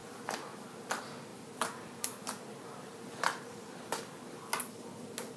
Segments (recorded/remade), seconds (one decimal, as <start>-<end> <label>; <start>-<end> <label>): 0.0-0.6 remade; 0.6-1.3 recorded; 1.3-4.5 remade; 4.5-5.4 recorded